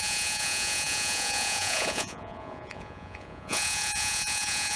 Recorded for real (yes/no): no